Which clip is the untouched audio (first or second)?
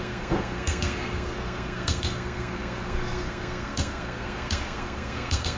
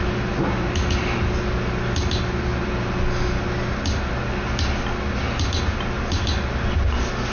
second